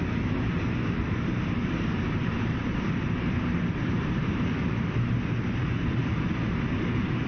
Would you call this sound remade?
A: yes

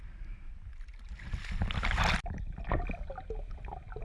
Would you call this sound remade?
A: no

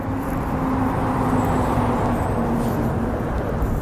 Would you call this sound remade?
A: no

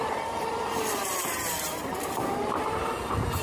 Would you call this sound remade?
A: yes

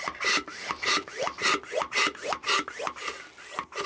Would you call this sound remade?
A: no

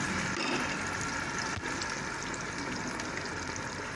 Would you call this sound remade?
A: no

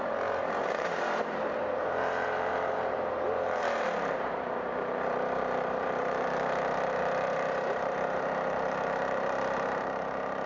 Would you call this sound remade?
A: yes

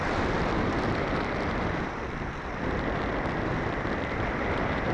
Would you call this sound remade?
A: yes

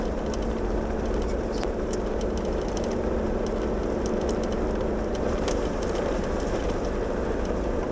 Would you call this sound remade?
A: yes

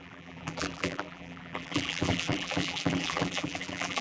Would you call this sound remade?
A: yes